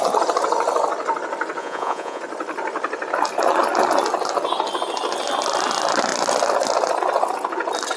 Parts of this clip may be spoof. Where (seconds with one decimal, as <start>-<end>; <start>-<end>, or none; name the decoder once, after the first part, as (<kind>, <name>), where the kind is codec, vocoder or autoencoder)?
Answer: 1.6-2.2 (vocoder, Vocos)

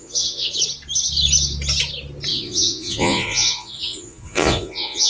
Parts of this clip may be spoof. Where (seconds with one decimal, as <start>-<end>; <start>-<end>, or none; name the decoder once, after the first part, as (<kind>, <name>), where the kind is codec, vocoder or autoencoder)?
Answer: 0.0-0.5 (vocoder, Vocos); 2.3-5.1

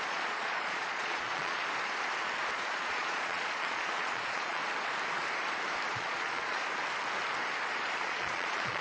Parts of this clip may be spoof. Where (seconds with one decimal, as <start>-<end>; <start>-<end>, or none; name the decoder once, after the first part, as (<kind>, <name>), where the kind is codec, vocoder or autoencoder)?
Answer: 0.0-1.6 (vocoder, Vocos); 2.5-4.6; 5.9-6.6; 8.0-8.8